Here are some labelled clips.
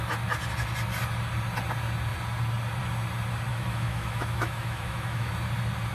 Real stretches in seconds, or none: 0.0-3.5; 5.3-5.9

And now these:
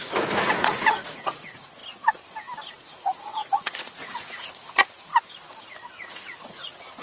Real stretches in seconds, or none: 1.8-2.7; 5.1-5.9

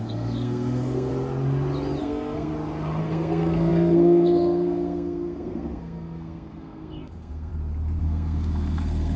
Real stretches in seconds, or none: 1.1-2.0; 2.5-3.0; 7.5-8.0

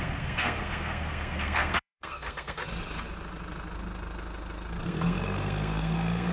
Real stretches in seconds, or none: 2.6-4.8

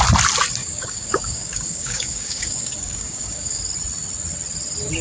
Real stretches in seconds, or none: 0.0-0.6; 3.6-5.0